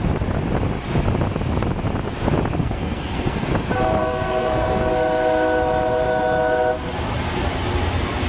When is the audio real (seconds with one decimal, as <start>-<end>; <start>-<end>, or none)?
0.0-2.6; 3.5-4.0; 4.8-8.3

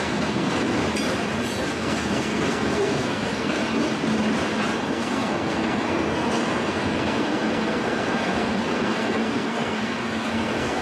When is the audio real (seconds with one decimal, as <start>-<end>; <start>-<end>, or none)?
0.8-1.7; 3.6-4.9